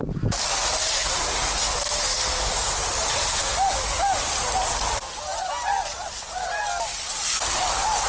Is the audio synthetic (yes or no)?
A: no